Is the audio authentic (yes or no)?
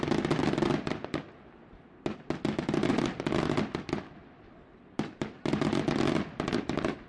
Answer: yes